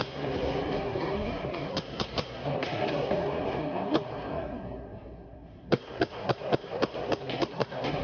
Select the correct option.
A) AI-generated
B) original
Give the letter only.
A